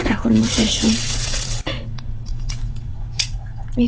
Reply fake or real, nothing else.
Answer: fake